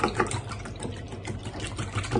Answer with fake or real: real